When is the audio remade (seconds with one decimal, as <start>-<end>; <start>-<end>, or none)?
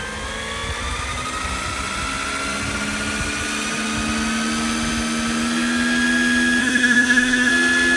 6.6-7.5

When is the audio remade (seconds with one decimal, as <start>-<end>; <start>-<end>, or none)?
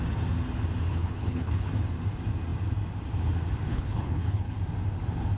0.9-1.7; 3.7-4.6